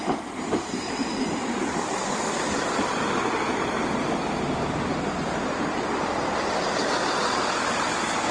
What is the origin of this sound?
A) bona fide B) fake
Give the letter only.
B